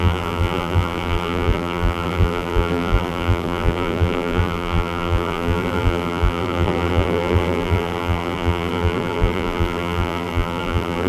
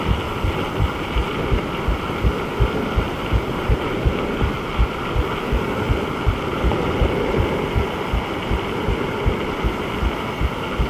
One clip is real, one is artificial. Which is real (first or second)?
second